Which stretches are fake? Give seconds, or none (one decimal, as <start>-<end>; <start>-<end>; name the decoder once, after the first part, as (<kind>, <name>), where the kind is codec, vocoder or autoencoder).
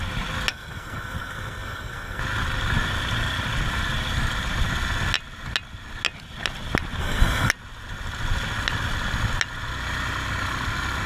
0.5-2.2 (codec, SNAC); 7.0-7.5